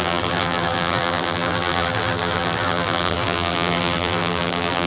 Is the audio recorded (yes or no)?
no